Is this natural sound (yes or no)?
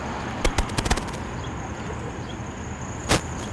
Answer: yes